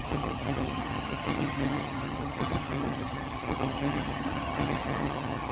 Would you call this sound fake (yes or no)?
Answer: yes